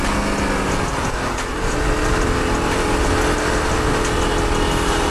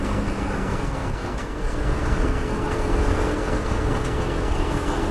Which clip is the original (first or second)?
first